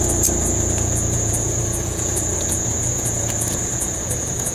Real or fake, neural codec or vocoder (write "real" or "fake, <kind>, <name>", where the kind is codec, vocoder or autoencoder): fake, vocoder, Vocos